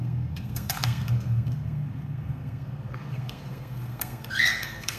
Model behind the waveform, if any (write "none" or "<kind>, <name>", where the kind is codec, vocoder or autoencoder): codec, SNAC